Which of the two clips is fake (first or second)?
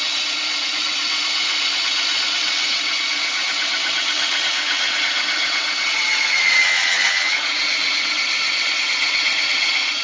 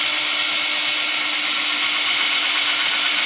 first